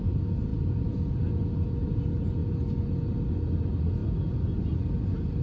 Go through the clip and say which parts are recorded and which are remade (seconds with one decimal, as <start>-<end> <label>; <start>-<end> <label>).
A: 0.0-0.5 recorded; 0.5-1.2 remade; 1.2-5.4 recorded